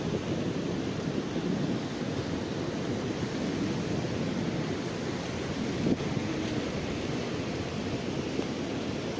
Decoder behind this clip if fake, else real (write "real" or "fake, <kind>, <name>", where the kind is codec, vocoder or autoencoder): real